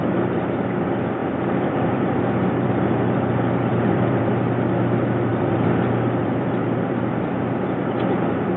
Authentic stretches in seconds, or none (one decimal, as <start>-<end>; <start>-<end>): 0.0-1.2; 2.7-3.7; 4.3-5.3; 7.6-8.6